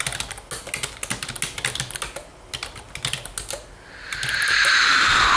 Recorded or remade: recorded